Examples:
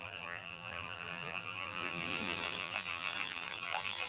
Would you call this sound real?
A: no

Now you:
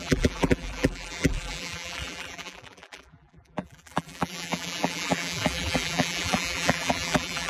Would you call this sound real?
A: no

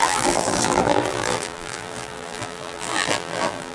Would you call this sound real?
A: no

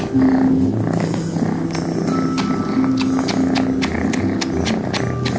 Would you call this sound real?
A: yes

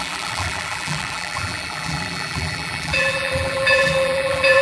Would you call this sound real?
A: no